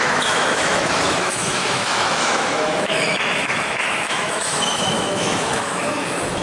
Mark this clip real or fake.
fake